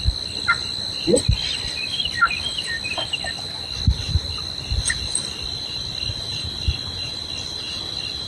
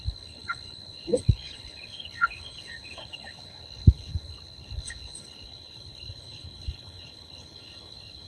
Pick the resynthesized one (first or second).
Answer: second